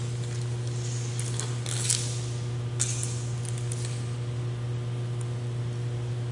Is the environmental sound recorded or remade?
recorded